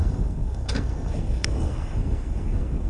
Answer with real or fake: fake